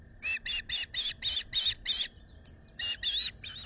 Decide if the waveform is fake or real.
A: real